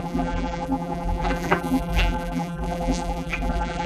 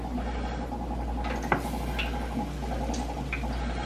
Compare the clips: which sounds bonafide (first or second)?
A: second